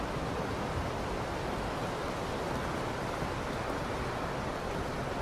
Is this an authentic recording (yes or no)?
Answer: yes